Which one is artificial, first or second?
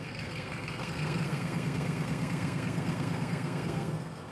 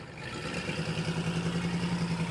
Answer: first